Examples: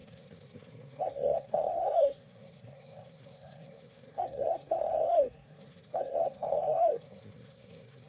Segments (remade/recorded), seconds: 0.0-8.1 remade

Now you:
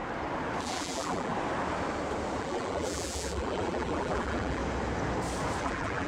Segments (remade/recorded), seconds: 0.0-0.6 recorded; 0.6-1.3 remade; 1.3-2.4 recorded; 2.4-4.6 remade; 4.6-5.6 recorded; 5.6-6.1 remade

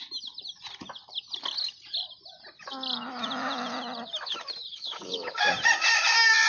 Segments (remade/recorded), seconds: 0.0-4.7 recorded; 4.7-5.4 remade; 5.4-6.5 recorded

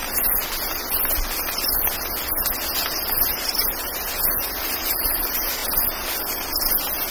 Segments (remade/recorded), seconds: 0.0-4.2 recorded; 4.2-5.6 remade; 5.6-7.1 recorded